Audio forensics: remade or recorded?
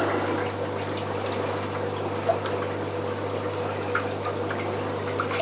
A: recorded